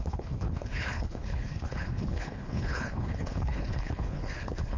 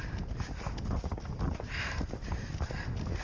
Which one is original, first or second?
second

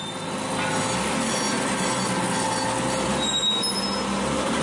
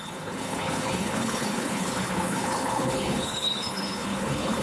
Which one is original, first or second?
first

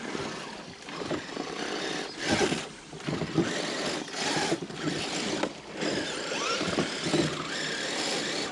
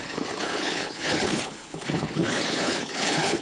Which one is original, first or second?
first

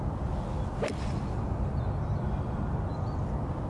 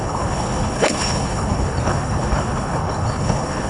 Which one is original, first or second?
first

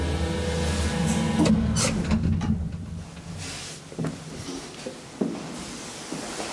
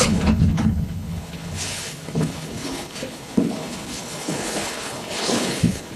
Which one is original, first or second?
first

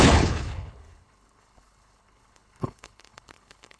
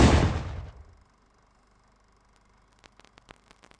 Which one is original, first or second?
second